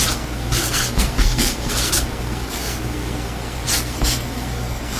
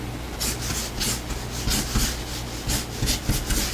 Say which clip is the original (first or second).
second